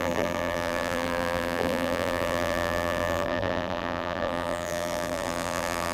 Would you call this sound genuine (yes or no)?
no